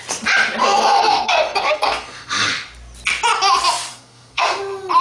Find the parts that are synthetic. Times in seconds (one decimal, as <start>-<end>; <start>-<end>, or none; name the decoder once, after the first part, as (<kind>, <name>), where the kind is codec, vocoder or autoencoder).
0.6-2.5 (codec, SNAC); 3.9-4.6